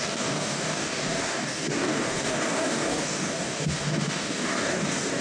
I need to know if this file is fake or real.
fake